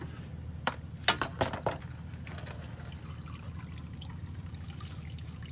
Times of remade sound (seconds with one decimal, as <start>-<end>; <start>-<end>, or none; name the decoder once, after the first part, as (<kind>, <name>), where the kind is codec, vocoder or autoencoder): none